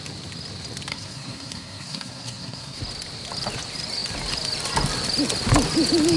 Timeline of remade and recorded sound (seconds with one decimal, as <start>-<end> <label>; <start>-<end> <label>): 0.0-0.9 recorded; 0.9-2.8 remade; 2.8-6.2 recorded